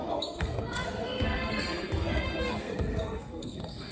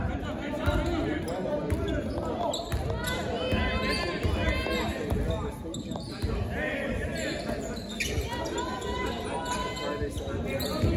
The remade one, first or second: first